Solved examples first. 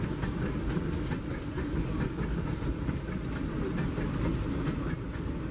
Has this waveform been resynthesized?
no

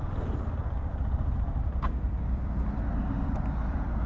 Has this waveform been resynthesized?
no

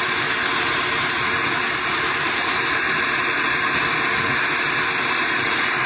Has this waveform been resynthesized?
yes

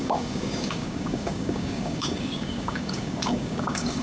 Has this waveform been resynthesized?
yes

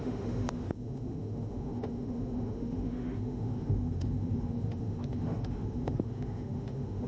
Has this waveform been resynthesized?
yes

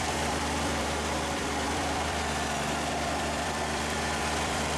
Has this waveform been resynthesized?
yes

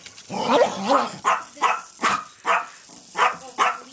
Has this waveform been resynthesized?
no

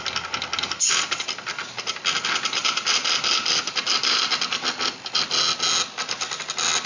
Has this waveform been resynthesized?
no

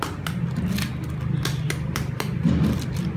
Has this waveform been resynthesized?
no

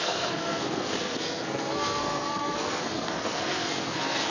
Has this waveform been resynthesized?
yes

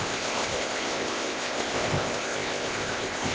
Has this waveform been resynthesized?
yes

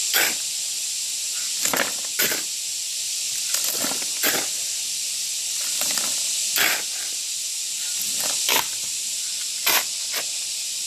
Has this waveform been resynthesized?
no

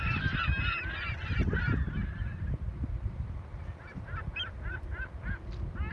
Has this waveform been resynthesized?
no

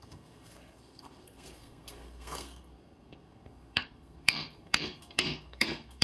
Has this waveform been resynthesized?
yes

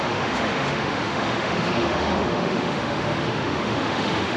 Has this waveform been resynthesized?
yes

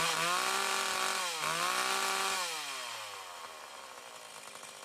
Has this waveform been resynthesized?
no